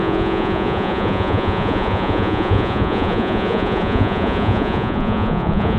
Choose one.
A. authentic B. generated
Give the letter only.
B